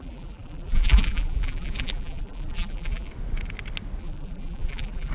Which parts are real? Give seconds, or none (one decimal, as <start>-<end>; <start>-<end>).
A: 3.1-4.0